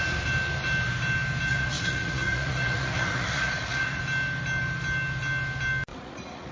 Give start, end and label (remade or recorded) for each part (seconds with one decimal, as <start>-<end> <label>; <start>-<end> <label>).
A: 0.0-1.5 recorded; 1.5-4.0 remade; 4.0-5.9 recorded; 5.9-6.5 remade